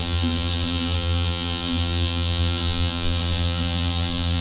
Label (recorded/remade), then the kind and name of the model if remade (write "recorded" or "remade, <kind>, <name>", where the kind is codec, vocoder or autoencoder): remade, vocoder, BigVGAN v2